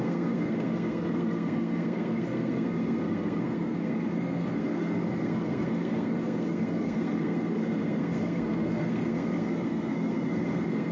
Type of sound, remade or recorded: remade